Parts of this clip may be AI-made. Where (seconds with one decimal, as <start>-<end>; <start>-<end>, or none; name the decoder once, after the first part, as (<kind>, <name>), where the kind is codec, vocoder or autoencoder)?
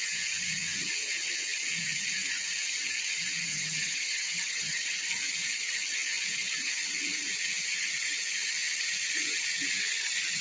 3.5-5.1 (vocoder, HiFi-GAN)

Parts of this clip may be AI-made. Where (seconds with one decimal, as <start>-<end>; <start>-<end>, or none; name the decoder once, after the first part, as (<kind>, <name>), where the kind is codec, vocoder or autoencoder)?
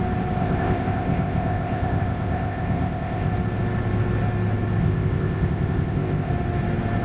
0.4-3.3 (codec, ZipCodec); 4.8-6.3